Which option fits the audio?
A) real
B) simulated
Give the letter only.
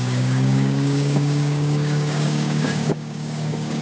B